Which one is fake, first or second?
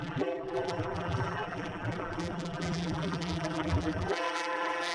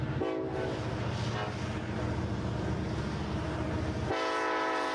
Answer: first